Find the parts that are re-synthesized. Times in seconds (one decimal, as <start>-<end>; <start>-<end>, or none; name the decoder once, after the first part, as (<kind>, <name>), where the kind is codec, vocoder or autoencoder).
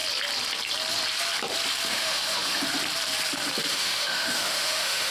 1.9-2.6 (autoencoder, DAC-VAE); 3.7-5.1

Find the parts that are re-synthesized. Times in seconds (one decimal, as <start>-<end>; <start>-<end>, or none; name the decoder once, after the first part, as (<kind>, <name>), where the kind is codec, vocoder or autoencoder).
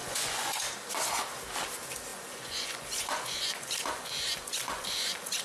0.0-0.6 (vocoder, Vocos); 2.1-5.4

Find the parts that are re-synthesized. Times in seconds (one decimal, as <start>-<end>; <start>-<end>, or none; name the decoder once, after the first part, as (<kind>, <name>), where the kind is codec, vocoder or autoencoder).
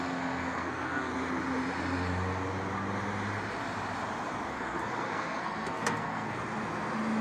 0.0-1.1 (codec, SNAC); 4.5-6.4